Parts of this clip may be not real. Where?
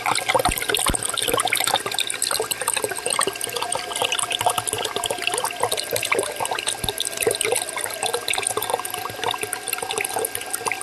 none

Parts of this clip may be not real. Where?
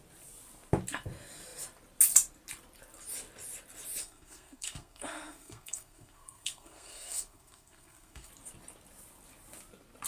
4.0-8.3 (codec, SNAC)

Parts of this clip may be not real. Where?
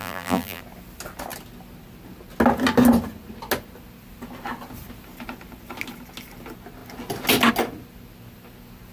0.0-0.6 (vocoder, BigVGAN v2)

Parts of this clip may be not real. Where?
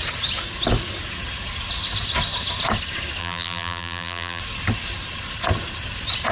3.2-4.4 (vocoder, BigVGAN v2)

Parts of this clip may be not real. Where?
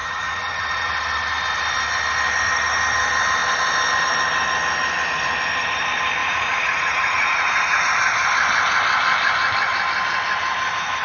0.0-0.9 (vocoder, Vocos); 6.2-7.8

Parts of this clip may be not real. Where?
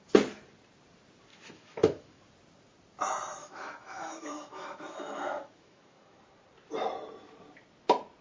1.3-2.2 (autoencoder, DAC-VAE); 3.4-6.2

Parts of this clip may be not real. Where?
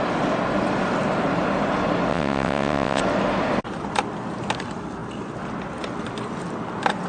2.1-3.0 (vocoder, WaveNeXt)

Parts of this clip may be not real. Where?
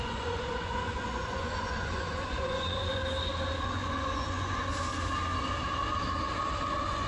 0.0-3.0 (vocoder, Vocos); 3.6-4.7; 6.6-7.1